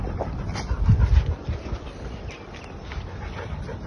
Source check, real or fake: real